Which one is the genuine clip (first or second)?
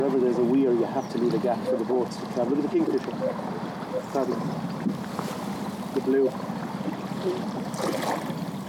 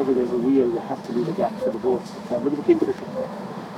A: first